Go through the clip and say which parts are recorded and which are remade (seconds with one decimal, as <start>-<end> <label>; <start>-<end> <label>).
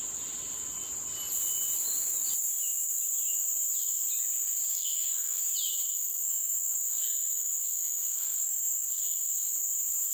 0.0-4.7 recorded; 4.7-5.4 remade; 5.4-5.9 recorded; 5.9-9.5 remade; 9.5-10.1 recorded